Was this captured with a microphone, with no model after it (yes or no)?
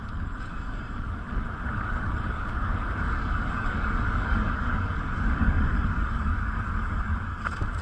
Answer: no